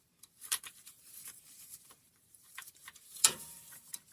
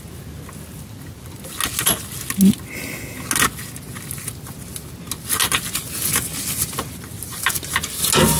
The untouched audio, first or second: second